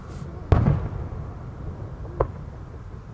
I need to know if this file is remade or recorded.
recorded